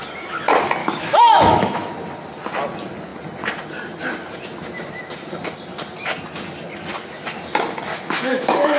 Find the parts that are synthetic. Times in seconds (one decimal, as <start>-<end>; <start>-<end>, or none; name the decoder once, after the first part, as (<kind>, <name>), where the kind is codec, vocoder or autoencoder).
0.8-1.9 (autoencoder, DAC-VAE); 7.9-8.8